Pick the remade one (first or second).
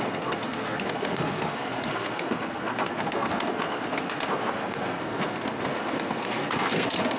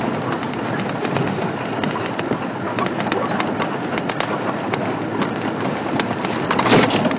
first